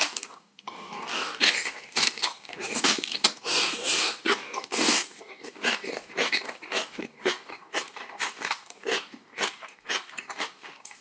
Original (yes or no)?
no